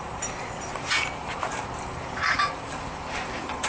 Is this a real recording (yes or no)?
no